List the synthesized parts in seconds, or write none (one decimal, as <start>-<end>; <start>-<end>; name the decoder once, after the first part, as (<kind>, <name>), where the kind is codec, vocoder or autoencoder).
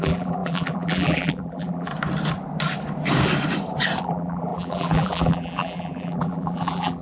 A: 0.0-1.9 (vocoder, BigVGAN v2); 4.0-7.0